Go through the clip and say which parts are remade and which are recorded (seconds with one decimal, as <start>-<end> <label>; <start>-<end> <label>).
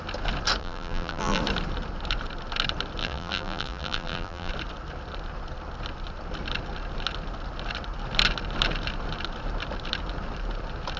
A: 0.0-0.6 recorded; 0.6-1.4 remade; 1.4-3.0 recorded; 3.0-4.5 remade; 4.5-11.0 recorded